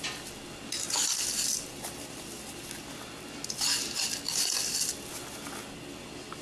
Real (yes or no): yes